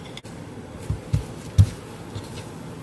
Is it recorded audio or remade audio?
recorded